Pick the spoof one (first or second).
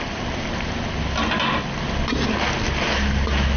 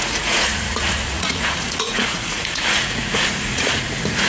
second